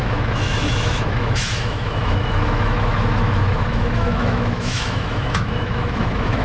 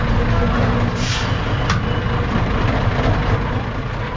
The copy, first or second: first